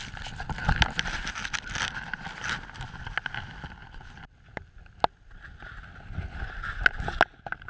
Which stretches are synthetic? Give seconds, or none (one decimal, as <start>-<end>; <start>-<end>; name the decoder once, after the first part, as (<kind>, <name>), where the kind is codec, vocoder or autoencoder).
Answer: none

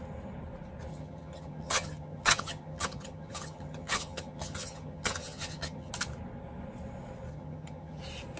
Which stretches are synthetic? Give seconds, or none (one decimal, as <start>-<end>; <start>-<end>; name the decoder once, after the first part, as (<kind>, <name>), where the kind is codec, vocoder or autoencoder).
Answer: 0.9-5.9 (vocoder, HiFi-GAN); 7.3-8.0

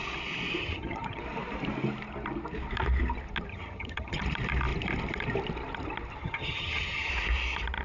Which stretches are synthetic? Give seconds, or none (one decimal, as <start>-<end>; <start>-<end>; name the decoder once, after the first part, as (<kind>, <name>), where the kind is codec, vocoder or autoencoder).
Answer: 0.6-1.2 (vocoder, HiFi-GAN); 3.5-4.2; 6.2-7.1

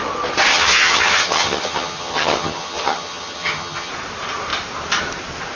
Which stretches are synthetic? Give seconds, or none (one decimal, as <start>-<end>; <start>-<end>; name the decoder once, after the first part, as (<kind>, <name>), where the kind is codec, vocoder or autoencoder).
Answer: 0.5-3.9 (vocoder, HiFi-GAN)

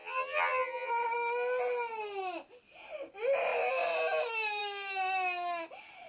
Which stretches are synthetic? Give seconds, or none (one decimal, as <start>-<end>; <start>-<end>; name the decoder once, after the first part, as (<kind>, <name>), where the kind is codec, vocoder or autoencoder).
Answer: 0.0-0.9 (vocoder, HiFi-GAN)

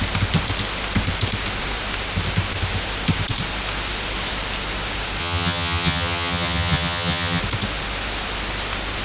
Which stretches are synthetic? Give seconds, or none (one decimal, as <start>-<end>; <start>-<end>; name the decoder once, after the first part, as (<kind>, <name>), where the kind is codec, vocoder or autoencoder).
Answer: 5.2-7.4 (vocoder, HiFi-GAN)

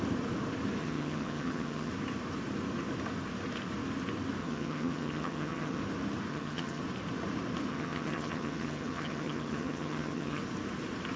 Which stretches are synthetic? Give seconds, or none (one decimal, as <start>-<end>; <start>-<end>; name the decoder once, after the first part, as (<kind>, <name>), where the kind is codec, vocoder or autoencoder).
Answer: 0.8-1.9 (vocoder, HiFi-GAN); 4.4-5.8; 6.3-6.8; 7.7-10.4